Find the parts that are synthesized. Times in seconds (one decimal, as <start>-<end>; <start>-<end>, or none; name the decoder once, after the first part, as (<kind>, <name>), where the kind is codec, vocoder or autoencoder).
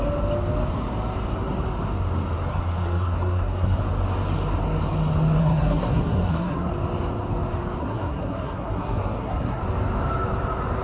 2.5-3.8 (codec, SNAC); 5.4-6.7; 7.8-9.6